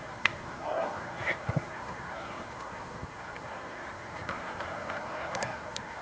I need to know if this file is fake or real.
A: fake